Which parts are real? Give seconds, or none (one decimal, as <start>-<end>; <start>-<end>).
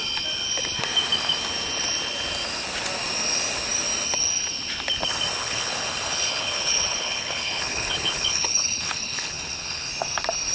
0.0-5.4; 9.9-10.5